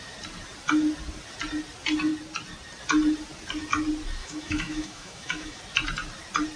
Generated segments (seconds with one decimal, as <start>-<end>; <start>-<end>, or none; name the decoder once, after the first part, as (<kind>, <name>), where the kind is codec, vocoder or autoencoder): 4.2-5.6 (autoencoder, DAC-VAE)